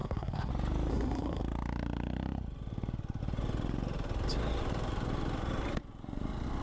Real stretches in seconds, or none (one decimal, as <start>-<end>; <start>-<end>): 0.5-0.9; 1.4-6.6